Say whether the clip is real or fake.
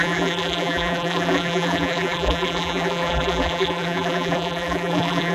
fake